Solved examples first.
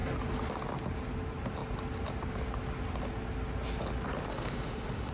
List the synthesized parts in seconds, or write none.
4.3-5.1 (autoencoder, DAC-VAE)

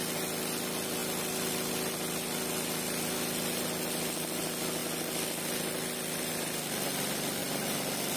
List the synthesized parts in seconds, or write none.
none

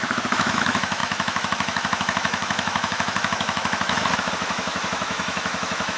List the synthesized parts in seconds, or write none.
0.0-6.0 (autoencoder, DAC-VAE)

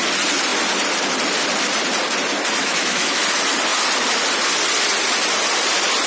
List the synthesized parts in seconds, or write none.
2.6-3.2 (autoencoder, DAC-VAE)